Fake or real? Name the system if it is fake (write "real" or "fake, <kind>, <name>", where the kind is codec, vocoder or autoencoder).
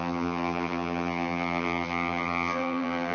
fake, vocoder, BigVGAN v2